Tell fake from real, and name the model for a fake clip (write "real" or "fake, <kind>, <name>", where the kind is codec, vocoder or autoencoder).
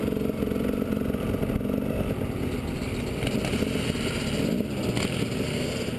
real